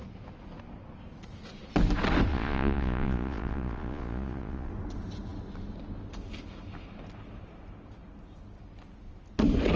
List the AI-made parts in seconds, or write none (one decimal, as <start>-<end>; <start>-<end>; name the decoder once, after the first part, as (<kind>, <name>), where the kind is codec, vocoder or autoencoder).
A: 2.3-4.7 (vocoder, Vocos)